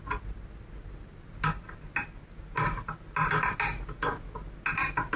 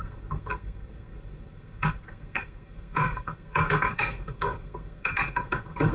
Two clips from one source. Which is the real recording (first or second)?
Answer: first